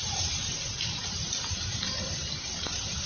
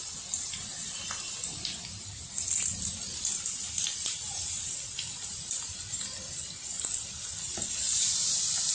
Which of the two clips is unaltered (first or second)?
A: second